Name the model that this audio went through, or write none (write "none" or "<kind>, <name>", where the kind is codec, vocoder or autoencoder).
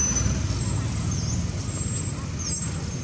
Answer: none